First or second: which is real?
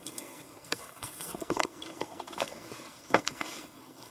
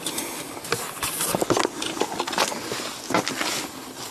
second